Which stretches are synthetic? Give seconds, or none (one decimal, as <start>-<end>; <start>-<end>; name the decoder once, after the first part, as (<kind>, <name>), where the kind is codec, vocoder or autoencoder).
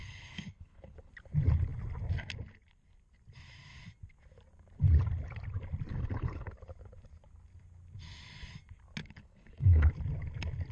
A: 0.0-1.1 (codec, HILCodec); 5.9-6.5; 9.0-9.9